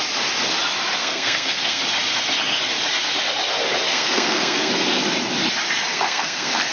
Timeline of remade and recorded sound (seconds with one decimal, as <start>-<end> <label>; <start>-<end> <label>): 0.0-1.0 recorded; 1.0-1.8 remade; 1.8-3.9 recorded; 3.9-4.7 remade; 4.7-5.9 recorded; 5.9-6.7 remade